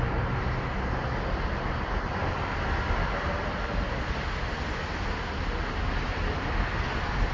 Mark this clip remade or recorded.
recorded